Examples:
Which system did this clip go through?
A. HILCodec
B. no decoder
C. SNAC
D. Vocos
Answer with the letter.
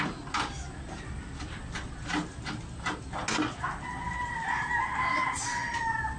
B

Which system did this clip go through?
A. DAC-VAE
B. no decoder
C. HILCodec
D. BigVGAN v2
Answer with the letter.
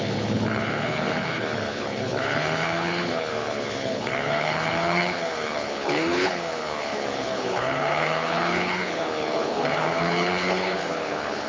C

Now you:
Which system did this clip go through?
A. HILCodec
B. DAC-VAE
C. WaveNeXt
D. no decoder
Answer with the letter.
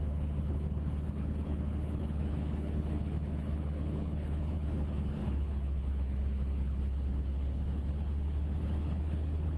A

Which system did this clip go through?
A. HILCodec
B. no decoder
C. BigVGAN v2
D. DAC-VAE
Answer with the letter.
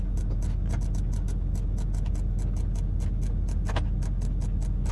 B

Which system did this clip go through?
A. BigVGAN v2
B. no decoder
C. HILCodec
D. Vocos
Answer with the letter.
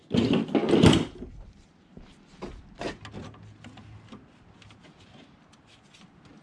B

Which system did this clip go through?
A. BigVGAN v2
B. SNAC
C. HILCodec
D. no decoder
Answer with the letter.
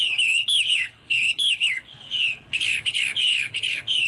C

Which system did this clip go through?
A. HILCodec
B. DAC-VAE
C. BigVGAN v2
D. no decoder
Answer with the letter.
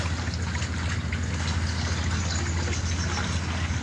D